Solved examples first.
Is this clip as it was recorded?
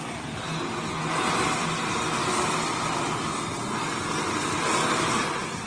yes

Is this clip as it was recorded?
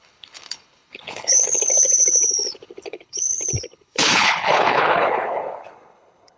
no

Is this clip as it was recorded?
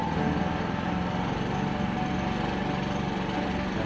yes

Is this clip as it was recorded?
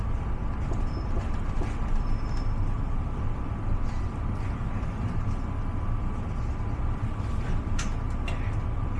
yes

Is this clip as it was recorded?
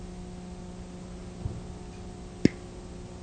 yes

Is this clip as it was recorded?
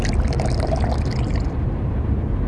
yes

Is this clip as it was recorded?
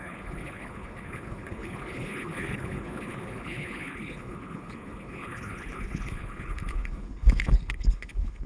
no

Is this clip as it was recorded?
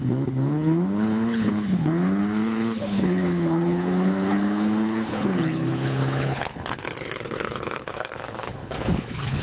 no